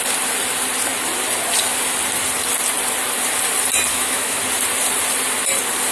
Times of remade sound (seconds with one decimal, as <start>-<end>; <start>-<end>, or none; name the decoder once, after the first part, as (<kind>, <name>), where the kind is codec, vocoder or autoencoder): 3.9-4.4 (autoencoder, DAC-VAE)